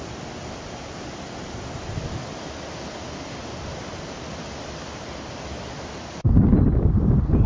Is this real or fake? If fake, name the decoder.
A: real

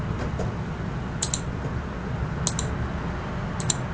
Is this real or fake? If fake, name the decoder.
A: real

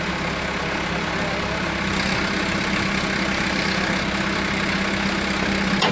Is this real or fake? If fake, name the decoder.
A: real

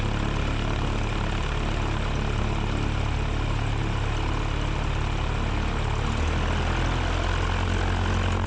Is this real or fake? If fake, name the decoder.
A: real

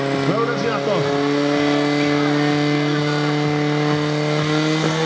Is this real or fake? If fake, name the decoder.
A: real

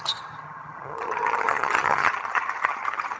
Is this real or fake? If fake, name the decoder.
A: fake, vocoder, HiFi-GAN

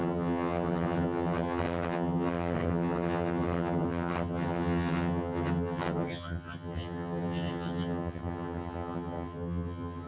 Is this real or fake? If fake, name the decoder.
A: fake, vocoder, HiFi-GAN